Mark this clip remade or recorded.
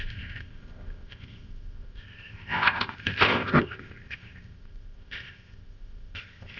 remade